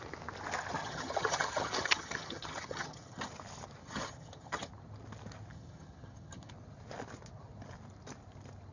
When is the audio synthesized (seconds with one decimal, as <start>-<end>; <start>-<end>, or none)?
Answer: 0.8-3.3; 3.8-4.7; 5.5-6.5